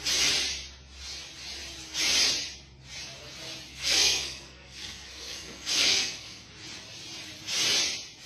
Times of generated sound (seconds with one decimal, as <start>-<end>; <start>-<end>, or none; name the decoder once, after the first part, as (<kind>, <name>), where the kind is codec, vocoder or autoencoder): 3.7-6.5 (codec, SNAC)

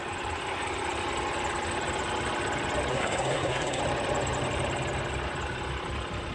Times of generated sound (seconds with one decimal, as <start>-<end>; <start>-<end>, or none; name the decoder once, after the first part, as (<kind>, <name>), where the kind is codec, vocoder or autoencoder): 2.9-3.8 (codec, SNAC)